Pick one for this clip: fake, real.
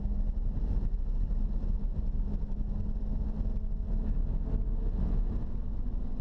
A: real